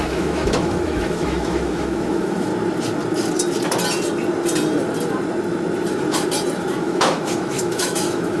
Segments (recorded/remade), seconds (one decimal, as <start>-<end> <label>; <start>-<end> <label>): 0.0-2.5 remade; 2.5-6.8 recorded; 6.8-8.4 remade